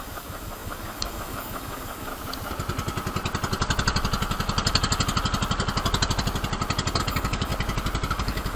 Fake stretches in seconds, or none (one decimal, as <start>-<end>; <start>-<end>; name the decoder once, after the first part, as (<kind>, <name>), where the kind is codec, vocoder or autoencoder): 0.0-2.1 (codec, DAC); 7.0-7.5; 8.1-8.6